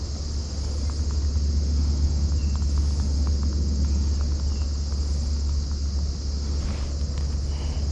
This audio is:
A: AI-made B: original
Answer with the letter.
B